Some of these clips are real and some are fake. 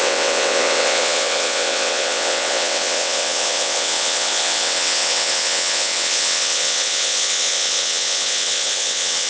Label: fake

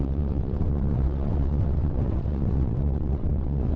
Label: fake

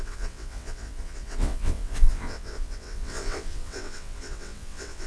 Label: fake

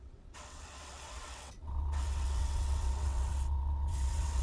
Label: fake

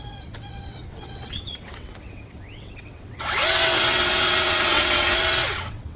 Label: fake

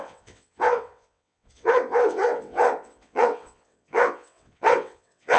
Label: fake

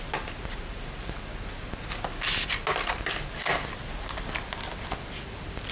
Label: real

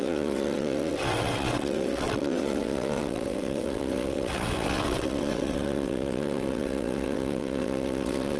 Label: fake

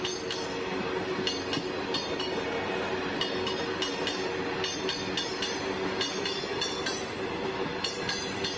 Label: real